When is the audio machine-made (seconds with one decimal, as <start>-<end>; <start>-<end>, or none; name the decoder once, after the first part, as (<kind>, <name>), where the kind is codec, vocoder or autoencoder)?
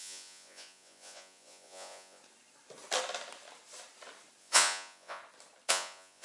0.0-2.2 (vocoder, Vocos); 4.4-5.2; 5.7-6.2